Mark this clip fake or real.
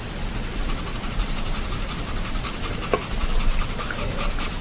real